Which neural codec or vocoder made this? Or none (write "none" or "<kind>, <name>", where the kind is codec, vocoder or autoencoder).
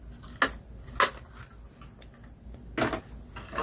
none